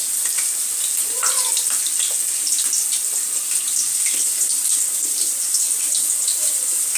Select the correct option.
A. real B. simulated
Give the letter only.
A